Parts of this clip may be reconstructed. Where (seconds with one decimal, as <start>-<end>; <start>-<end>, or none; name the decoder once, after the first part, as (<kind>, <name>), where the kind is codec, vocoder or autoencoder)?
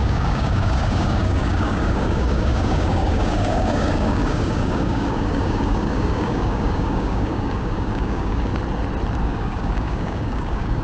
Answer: 0.0-8.5 (codec, DAC); 9.2-10.8